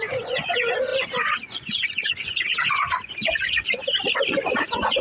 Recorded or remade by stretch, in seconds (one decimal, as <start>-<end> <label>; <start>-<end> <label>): 0.0-3.8 remade; 3.8-4.3 recorded; 4.3-5.0 remade